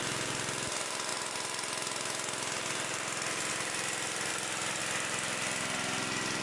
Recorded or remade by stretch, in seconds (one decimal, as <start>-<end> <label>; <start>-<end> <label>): 0.0-6.4 recorded